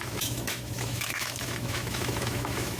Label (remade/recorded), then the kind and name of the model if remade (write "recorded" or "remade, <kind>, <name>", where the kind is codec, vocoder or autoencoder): remade, autoencoder, DAC-VAE